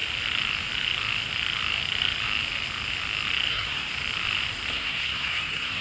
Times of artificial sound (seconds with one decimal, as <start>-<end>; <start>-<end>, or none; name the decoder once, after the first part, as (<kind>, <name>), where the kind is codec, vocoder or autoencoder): 3.5-3.9 (codec, SNAC); 4.7-5.8